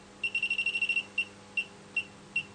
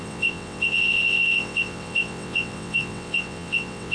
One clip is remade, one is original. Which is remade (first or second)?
second